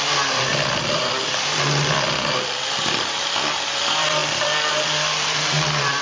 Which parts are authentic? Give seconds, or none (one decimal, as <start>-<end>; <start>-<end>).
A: none